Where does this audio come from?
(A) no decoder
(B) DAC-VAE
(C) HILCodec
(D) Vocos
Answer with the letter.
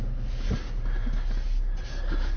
A